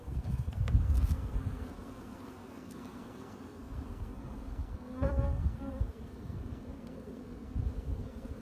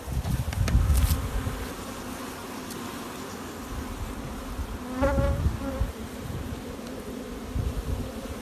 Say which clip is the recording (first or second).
second